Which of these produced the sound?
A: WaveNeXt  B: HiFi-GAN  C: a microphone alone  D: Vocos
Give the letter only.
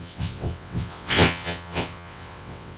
A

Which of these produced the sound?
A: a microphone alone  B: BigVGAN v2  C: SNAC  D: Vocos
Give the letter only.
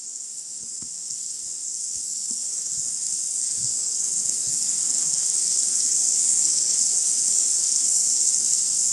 C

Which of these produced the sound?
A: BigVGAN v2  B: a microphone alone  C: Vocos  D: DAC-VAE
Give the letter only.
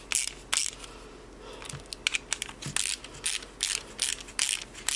B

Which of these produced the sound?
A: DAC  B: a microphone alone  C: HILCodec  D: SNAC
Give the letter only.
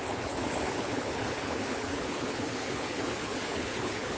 C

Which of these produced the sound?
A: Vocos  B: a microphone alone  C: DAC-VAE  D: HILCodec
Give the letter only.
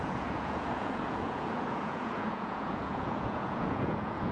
A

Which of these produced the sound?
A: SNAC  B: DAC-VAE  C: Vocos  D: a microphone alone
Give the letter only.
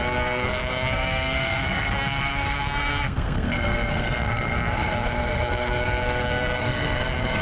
A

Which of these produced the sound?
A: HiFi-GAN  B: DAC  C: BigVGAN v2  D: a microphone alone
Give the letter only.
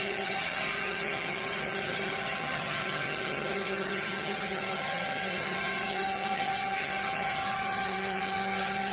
A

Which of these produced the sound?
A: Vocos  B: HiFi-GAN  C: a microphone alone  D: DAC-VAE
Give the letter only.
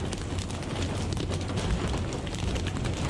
C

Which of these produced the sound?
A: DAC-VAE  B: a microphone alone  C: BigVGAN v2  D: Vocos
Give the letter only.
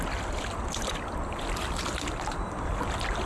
B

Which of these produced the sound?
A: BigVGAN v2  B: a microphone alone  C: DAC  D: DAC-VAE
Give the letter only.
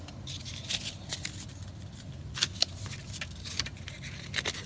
B